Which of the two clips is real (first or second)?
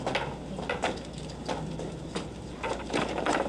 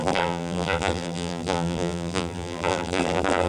first